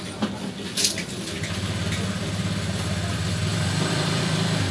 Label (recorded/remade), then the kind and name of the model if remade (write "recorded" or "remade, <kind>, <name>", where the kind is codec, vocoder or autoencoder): remade, vocoder, BigVGAN v2